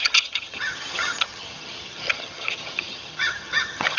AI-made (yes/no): yes